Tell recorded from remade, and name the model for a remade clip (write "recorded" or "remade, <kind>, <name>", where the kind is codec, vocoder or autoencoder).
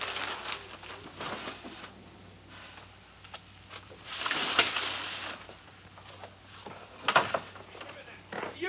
recorded